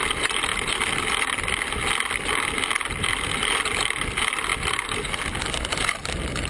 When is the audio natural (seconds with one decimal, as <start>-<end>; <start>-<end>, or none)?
0.0-6.5